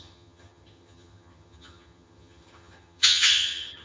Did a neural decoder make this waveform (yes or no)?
yes